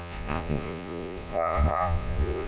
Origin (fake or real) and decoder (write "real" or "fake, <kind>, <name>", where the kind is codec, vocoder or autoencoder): fake, vocoder, Vocos